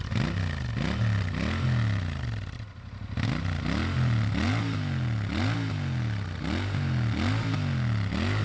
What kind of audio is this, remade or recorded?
recorded